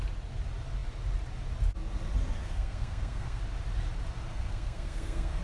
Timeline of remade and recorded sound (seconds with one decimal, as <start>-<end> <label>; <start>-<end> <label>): 0.0-2.4 recorded; 2.4-3.4 remade; 3.4-4.3 recorded; 4.3-5.4 remade

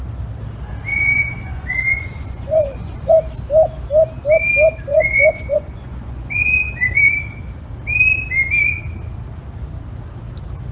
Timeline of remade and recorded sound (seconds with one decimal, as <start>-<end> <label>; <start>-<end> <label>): 0.0-0.9 recorded; 0.9-3.1 remade; 3.1-4.9 recorded; 4.9-7.0 remade; 7.0-10.7 recorded

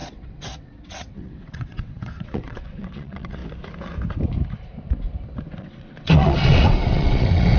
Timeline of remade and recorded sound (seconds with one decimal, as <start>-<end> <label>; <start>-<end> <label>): 0.0-3.4 remade; 3.4-5.6 recorded; 5.6-7.6 remade

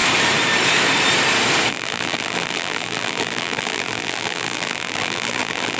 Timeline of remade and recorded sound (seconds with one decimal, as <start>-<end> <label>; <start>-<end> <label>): 0.0-1.7 recorded; 1.7-5.8 remade

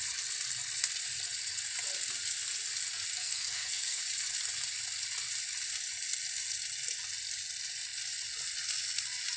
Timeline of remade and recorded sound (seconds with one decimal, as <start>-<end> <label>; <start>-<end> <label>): 0.0-3.1 recorded; 3.1-4.0 remade; 4.0-9.4 recorded

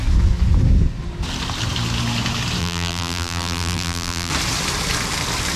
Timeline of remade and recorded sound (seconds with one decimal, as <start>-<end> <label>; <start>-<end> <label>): 0.0-2.6 recorded; 2.6-4.3 remade; 4.3-5.6 recorded

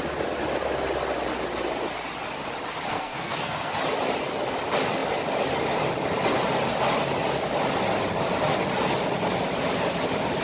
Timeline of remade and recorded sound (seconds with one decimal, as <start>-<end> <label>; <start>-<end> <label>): 0.0-2.9 recorded; 2.9-3.7 remade; 3.7-10.4 recorded

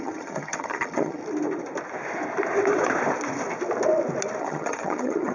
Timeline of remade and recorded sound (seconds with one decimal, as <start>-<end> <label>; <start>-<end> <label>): 0.0-1.2 remade; 1.2-4.4 recorded; 4.4-5.3 remade